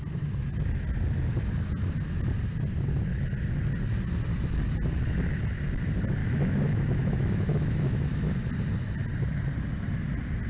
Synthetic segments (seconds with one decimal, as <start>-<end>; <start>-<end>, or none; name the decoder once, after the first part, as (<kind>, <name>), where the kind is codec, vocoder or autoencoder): 6.2-8.3 (autoencoder, DAC-VAE)